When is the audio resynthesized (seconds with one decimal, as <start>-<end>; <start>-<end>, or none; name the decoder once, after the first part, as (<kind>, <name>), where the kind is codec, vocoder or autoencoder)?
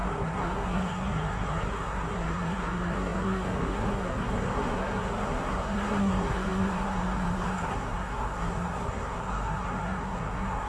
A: 0.0-10.7 (codec, SNAC)